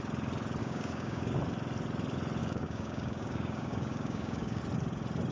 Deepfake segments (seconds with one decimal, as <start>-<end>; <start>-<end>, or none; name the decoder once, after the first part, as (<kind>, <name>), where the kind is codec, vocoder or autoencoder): 0.6-1.4 (codec, DAC); 2.4-4.6